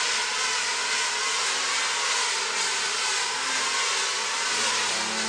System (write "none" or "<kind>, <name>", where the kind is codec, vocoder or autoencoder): none